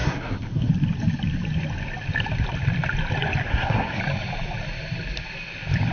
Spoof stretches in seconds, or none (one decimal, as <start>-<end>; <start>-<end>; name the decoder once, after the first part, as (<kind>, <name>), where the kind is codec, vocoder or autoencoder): 0.0-0.7 (codec, SNAC); 3.5-4.0